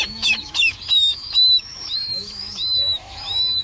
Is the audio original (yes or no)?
no